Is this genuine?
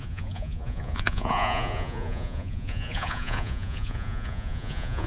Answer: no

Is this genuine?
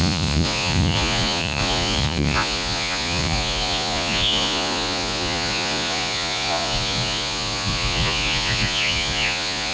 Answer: no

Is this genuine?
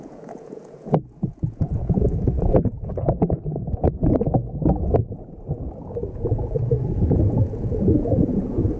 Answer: no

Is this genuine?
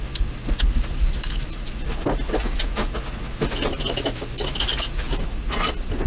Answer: yes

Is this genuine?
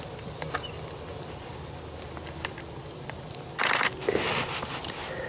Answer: yes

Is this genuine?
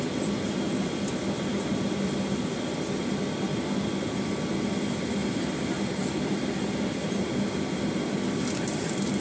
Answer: yes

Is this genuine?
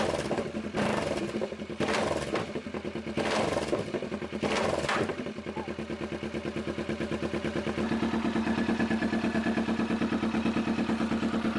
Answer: yes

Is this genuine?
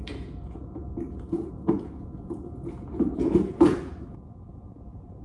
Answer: no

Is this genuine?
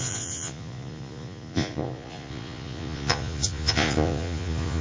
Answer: no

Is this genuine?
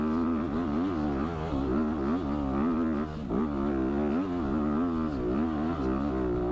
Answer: yes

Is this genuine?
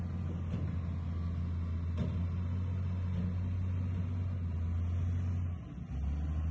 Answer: yes